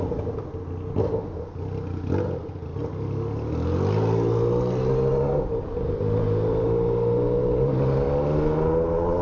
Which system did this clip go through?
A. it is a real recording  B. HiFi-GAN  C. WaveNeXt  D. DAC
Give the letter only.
A